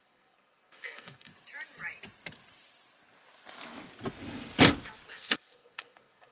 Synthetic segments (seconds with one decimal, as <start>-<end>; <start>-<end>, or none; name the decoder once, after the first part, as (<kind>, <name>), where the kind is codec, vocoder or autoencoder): 0.0-1.3 (codec, SNAC); 5.1-6.3